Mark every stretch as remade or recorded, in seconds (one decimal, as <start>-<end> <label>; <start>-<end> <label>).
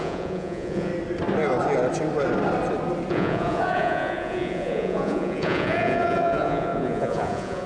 0.0-0.9 remade; 0.9-3.1 recorded; 3.1-7.7 remade